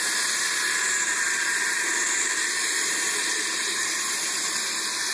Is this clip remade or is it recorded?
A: remade